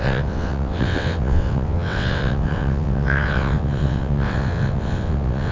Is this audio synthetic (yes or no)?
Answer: yes